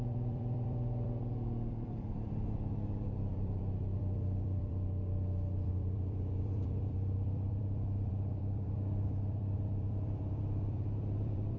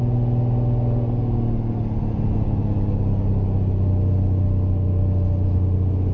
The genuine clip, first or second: second